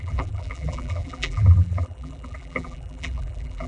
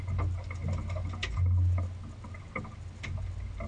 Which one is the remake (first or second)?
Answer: first